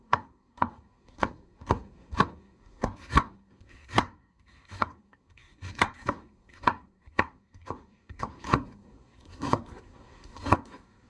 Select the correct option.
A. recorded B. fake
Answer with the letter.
B